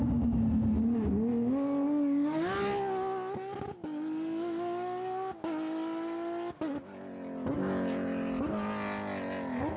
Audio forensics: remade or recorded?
recorded